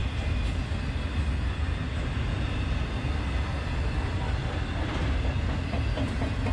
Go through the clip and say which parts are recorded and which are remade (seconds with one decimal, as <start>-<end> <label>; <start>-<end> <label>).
0.0-6.5 recorded